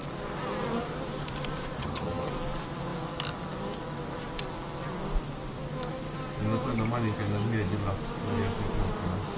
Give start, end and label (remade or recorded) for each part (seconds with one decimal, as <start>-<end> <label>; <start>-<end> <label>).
0.0-1.8 recorded; 1.8-2.3 remade; 2.3-9.4 recorded